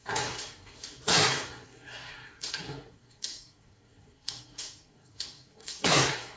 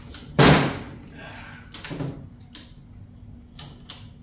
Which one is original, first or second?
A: second